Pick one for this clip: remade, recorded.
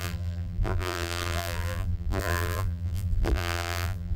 remade